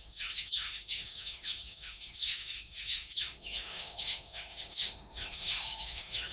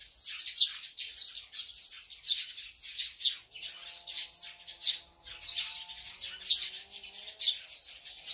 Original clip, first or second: second